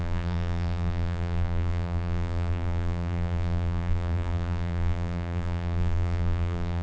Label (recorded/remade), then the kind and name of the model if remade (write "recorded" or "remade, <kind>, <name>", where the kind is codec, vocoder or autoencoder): remade, vocoder, BigVGAN v2